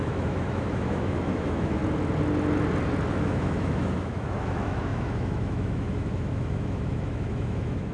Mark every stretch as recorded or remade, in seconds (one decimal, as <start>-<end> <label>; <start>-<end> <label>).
0.0-1.8 remade; 1.8-3.1 recorded; 3.1-7.9 remade